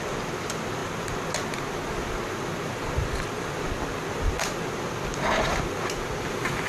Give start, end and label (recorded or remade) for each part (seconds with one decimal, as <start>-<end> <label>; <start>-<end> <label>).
0.0-6.7 recorded